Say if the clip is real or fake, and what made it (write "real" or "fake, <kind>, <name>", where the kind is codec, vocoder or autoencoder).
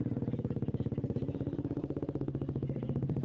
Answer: fake, vocoder, BigVGAN v2